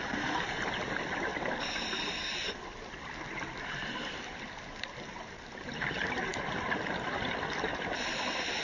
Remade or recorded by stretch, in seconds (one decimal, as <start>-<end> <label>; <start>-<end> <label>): 0.0-8.6 recorded